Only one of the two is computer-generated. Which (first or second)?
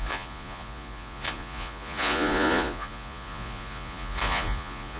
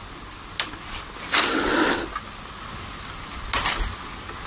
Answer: first